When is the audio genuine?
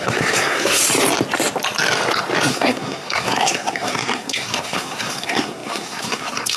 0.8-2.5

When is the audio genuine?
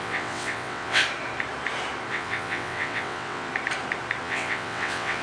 1.0-2.1; 3.5-4.2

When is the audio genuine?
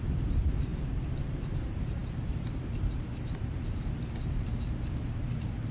0.7-1.2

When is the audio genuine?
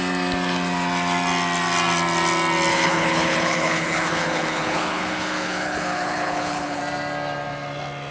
0.0-2.7; 6.8-8.1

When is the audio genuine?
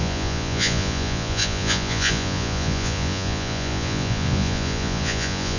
none